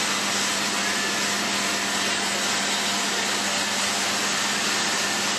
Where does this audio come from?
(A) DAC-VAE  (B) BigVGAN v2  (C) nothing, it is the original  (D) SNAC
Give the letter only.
C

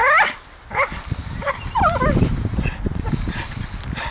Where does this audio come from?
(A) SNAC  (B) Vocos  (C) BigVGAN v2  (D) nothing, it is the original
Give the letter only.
D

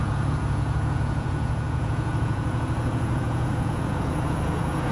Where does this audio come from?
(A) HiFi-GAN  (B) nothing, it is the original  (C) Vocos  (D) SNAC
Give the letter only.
C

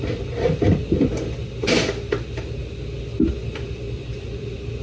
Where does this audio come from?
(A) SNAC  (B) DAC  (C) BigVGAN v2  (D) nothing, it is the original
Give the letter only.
D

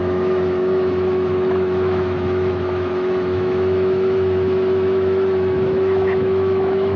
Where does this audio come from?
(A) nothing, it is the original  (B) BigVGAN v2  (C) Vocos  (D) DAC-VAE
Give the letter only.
D